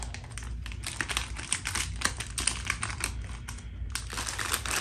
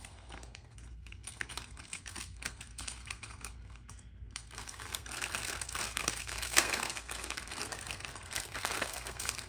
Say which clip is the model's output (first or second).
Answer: second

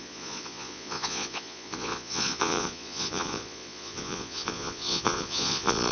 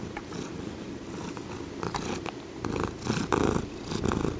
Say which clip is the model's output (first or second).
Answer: first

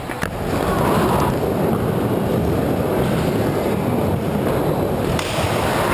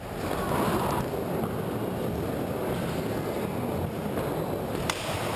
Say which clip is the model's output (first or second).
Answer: first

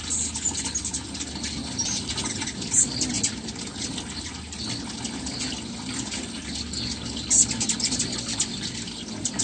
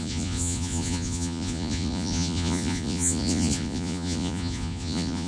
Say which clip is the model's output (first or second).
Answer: second